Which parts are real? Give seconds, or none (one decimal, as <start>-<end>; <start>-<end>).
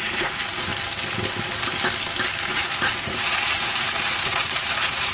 0.7-2.5